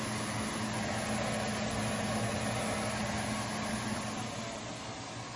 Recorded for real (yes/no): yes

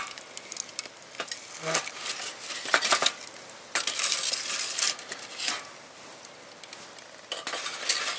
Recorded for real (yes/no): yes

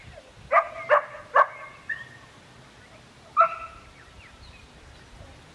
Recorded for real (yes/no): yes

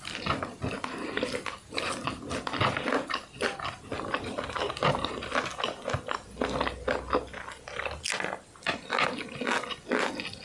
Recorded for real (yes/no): yes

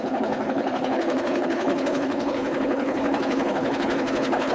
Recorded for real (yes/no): no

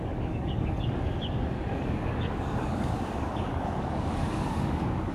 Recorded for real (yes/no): no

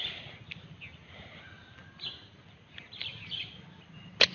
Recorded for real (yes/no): yes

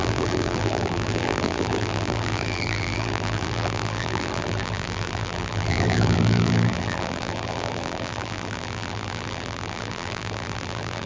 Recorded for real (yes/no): no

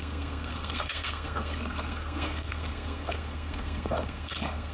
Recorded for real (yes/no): no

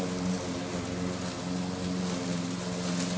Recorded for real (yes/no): yes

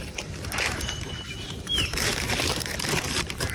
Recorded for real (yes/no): no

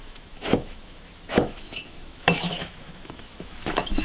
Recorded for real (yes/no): no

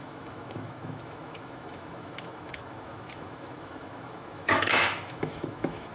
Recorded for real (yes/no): no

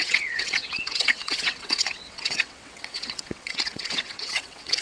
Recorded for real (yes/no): no